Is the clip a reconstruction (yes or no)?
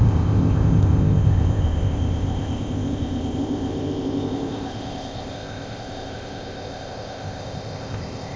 yes